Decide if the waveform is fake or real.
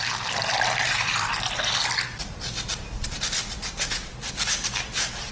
real